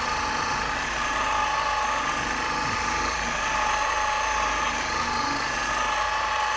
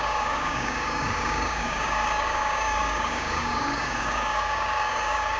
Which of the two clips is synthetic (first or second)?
second